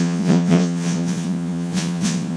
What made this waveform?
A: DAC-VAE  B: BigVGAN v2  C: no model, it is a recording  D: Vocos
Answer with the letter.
D